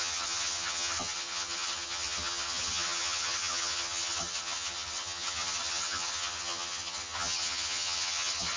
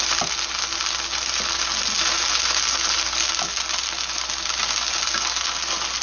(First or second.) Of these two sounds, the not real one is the first